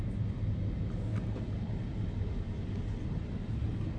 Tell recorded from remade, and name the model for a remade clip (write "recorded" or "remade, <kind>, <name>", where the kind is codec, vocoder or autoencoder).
recorded